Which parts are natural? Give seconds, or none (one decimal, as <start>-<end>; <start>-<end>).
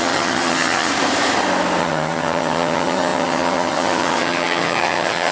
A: 0.9-1.8